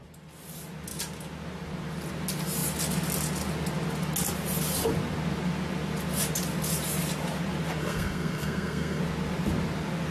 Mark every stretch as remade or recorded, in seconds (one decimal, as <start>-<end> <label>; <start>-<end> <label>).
0.0-7.8 recorded; 7.8-9.0 remade; 9.0-10.1 recorded